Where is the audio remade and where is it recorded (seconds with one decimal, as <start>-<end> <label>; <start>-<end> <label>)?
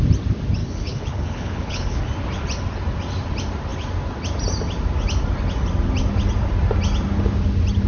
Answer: 0.0-0.6 recorded; 0.6-2.0 remade; 2.0-7.9 recorded